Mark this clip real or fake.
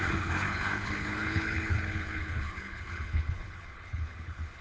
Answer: fake